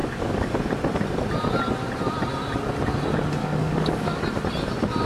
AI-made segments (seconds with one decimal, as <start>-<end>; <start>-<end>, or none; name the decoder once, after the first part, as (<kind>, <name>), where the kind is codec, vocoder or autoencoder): 0.0-0.5 (codec, DAC); 3.4-4.2